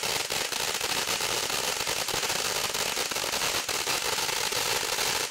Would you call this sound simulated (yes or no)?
no